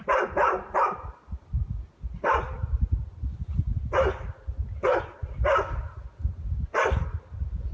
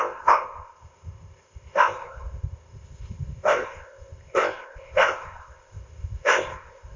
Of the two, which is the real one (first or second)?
first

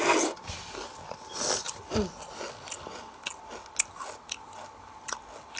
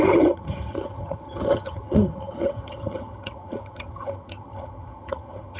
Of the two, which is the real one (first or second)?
first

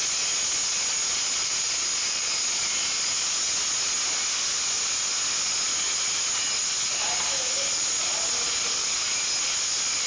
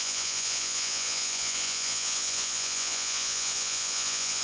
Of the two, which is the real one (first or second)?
first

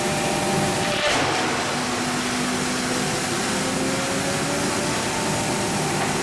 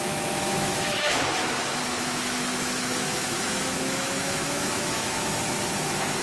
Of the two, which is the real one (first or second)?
first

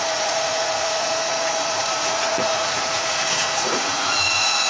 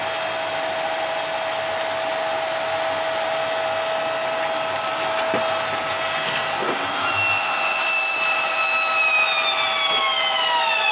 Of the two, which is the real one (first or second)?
second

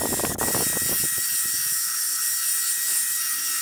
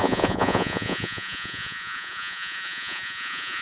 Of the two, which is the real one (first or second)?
first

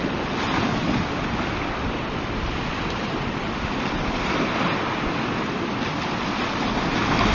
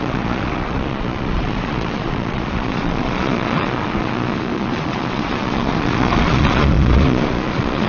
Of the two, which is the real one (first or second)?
first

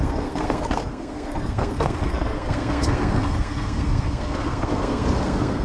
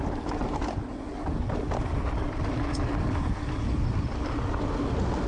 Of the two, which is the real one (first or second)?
second